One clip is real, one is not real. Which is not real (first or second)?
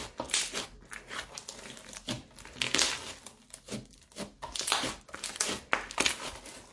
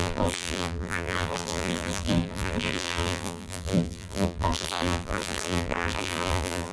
second